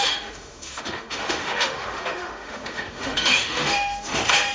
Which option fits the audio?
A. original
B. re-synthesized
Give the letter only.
B